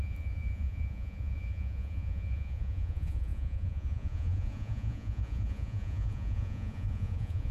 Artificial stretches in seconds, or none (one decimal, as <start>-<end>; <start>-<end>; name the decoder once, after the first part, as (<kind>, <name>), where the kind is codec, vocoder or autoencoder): 0.0-7.5 (vocoder, Vocos)